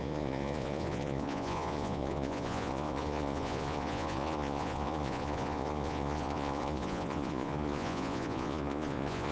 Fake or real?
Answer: fake